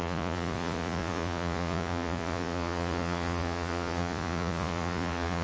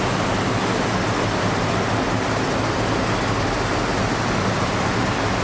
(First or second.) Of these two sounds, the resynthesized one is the first